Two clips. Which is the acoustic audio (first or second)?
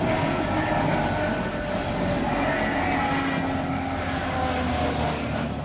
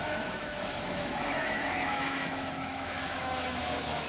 first